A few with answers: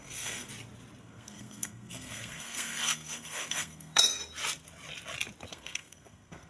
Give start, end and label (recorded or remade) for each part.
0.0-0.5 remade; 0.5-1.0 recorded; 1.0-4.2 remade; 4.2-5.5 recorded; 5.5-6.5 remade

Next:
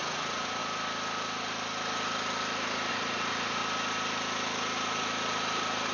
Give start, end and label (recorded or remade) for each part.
0.0-0.6 remade; 0.6-2.9 recorded; 2.9-3.6 remade; 3.6-5.9 recorded

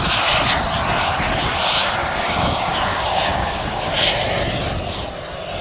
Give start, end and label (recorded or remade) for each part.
0.0-2.0 recorded; 2.0-3.8 remade; 3.8-5.6 recorded